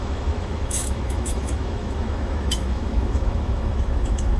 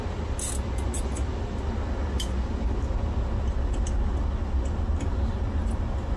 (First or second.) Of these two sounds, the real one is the second